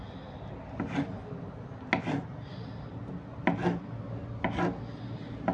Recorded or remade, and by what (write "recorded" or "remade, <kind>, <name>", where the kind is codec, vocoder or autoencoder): recorded